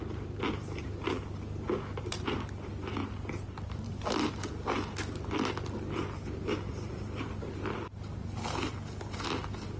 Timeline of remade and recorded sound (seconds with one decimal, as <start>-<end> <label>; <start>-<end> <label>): 0.0-9.8 recorded